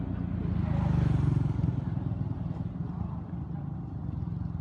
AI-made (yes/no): no